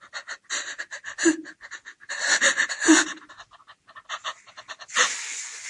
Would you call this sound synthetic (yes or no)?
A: no